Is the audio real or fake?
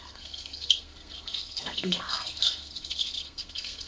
fake